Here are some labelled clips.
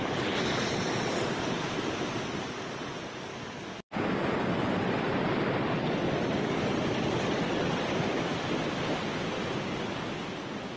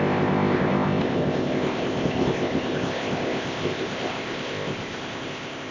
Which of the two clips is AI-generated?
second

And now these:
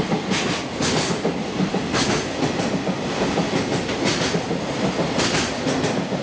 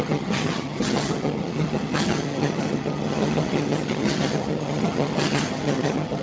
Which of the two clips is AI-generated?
second